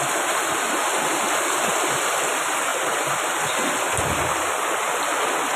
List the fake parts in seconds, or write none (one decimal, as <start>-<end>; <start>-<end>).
none